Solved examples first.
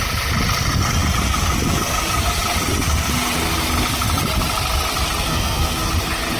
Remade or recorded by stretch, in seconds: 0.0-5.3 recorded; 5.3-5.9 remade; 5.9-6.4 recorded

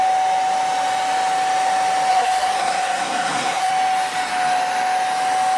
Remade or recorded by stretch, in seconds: 0.0-2.1 recorded; 2.1-3.7 remade; 3.7-5.6 recorded

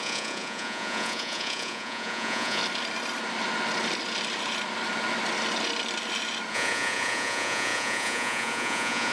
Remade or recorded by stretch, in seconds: 0.0-2.6 remade; 2.6-6.5 recorded; 6.5-9.1 remade